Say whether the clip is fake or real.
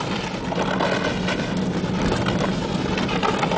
real